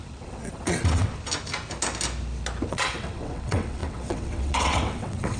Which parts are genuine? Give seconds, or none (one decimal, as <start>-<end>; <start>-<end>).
1.1-2.7